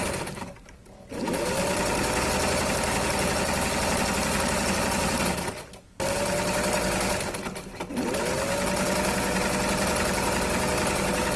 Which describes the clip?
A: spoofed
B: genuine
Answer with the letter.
B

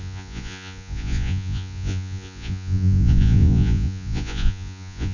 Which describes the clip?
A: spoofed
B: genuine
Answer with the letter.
A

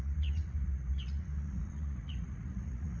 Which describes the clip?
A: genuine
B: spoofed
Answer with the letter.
B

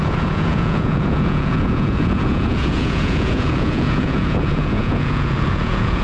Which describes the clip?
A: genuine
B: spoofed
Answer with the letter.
B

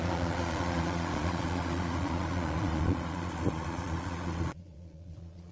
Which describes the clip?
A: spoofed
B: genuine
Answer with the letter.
A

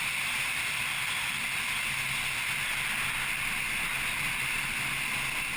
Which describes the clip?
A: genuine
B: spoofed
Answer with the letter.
A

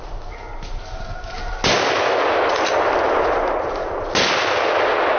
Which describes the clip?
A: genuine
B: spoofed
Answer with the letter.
A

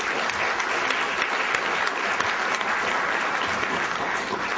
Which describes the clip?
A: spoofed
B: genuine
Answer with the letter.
B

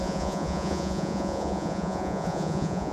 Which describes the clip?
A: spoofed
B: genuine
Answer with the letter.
A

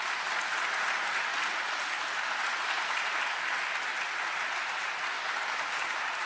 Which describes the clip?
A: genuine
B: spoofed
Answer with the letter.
A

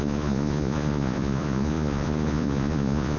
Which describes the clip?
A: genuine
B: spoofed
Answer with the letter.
B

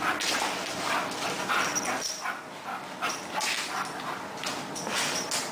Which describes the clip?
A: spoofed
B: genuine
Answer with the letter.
B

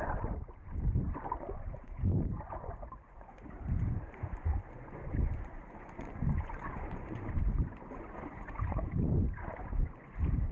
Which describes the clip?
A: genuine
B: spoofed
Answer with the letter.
B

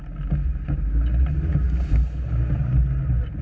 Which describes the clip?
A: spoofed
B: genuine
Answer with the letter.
B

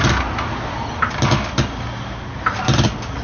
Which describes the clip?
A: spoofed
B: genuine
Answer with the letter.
B